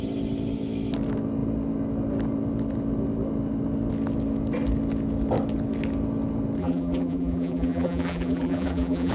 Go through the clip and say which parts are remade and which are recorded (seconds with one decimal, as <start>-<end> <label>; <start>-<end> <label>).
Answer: 0.0-6.6 recorded; 6.6-9.1 remade